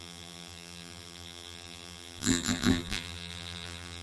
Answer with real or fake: fake